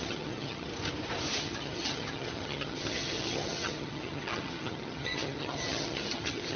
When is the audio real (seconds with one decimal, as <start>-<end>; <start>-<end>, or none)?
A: 0.7-1.4